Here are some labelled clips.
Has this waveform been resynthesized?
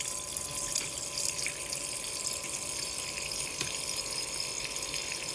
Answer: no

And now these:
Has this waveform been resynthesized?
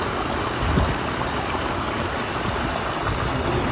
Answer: no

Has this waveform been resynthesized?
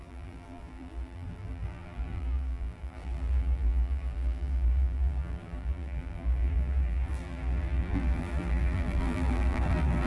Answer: yes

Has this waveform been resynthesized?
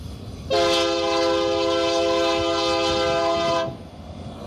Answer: no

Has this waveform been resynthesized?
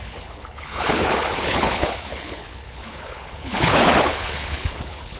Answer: yes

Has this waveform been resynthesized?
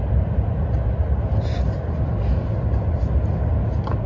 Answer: no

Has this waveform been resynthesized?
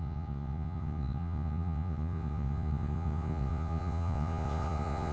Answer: yes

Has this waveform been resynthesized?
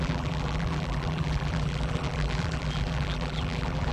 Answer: yes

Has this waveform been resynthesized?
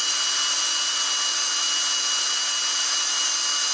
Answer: no